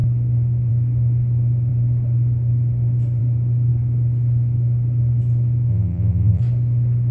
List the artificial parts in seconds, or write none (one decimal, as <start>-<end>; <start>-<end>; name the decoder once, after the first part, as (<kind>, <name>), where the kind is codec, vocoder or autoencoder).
5.7-6.4 (vocoder, BigVGAN v2)